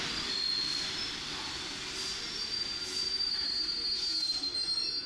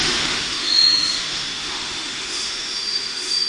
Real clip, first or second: first